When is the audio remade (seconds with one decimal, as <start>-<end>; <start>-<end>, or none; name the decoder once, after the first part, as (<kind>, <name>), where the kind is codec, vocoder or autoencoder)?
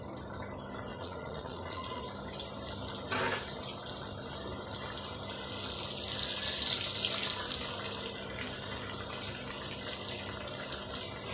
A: 0.9-2.0 (vocoder, Vocos)